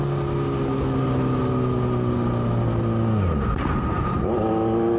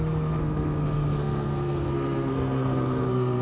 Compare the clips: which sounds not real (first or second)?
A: second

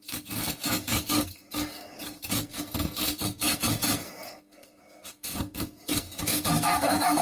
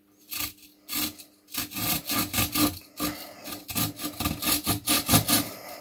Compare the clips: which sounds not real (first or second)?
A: first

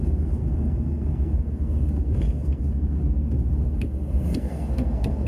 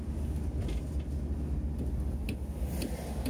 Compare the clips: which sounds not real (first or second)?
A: first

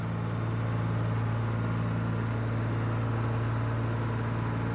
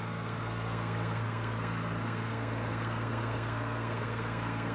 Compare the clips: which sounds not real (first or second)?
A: second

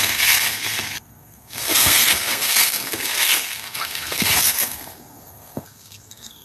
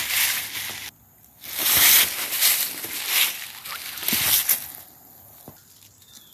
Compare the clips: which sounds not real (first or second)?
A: first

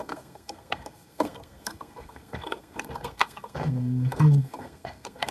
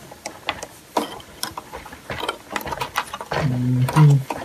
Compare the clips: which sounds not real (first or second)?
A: first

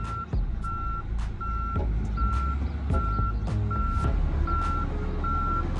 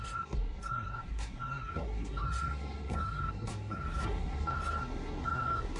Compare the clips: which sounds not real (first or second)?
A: second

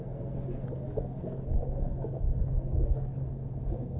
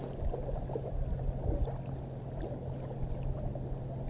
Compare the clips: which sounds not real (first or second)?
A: first